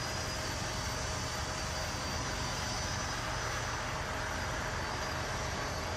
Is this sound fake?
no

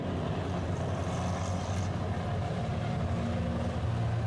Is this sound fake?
no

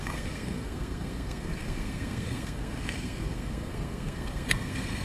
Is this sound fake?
yes